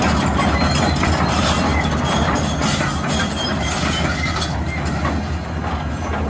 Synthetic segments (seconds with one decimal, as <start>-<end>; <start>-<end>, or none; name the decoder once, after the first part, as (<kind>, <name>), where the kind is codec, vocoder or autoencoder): none

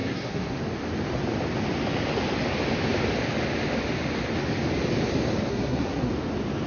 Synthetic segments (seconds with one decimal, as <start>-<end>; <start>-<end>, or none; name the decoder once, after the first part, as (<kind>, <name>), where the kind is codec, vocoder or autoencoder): 0.0-0.6 (codec, SNAC); 5.5-6.1

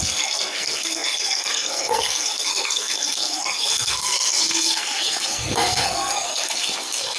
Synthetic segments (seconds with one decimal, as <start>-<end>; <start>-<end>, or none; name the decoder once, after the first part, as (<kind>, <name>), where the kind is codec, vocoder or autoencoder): 0.0-7.2 (codec, SNAC)

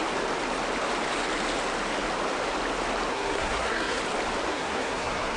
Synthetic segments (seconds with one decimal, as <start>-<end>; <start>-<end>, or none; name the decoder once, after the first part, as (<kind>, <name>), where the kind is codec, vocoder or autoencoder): 3.1-4.0 (codec, SNAC); 4.5-5.4

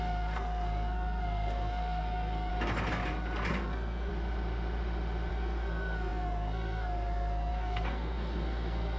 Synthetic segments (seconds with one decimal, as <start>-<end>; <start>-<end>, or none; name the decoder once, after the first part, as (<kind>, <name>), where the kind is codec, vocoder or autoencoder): 0.0-2.5 (codec, SNAC); 3.5-4.1; 5.3-9.0

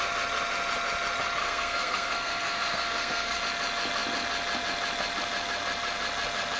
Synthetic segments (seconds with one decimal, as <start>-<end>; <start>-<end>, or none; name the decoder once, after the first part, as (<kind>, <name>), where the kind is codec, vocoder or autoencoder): 1.4-3.4 (codec, SNAC)

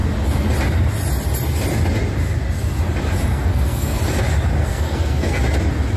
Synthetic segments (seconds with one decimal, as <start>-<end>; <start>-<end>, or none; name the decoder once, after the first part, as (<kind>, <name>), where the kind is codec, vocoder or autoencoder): 3.3-4.0 (codec, SNAC); 4.6-5.4

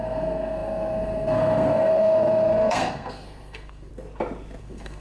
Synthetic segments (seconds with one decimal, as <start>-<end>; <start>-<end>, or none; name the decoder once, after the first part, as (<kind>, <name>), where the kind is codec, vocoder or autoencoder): 0.0-3.9 (codec, SNAC); 4.6-5.0